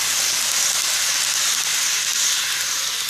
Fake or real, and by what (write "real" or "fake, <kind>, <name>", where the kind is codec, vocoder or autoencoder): real